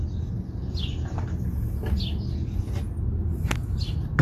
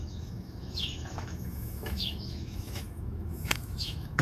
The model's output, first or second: second